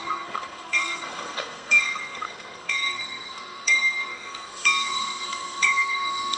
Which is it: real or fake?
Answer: fake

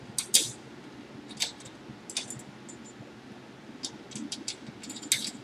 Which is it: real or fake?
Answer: real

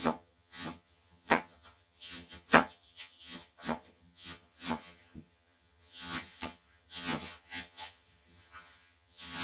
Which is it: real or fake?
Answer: fake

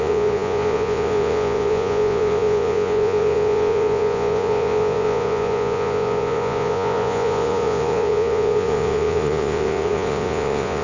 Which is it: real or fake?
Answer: fake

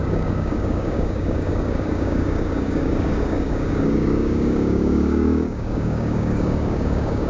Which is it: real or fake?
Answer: fake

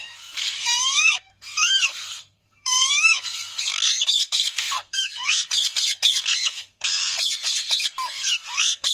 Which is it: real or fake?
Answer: fake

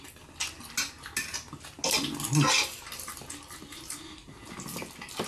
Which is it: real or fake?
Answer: real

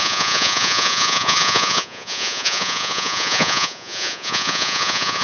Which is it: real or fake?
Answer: fake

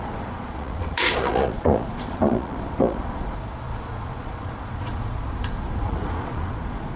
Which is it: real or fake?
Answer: fake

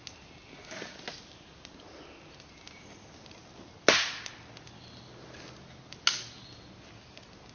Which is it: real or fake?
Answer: real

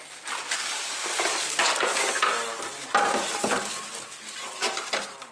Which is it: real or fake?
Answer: real